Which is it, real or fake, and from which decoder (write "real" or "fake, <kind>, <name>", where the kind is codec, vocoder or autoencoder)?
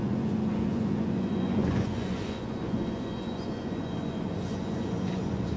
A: fake, vocoder, Vocos